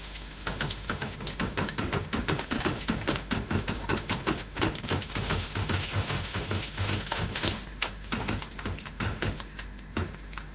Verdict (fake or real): fake